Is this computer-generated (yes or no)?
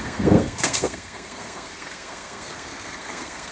yes